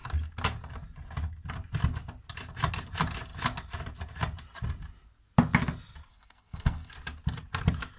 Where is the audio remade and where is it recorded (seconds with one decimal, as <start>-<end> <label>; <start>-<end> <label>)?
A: 0.0-6.1 recorded; 6.1-6.9 remade; 6.9-8.0 recorded